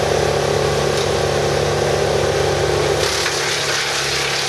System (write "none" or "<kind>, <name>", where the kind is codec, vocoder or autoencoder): none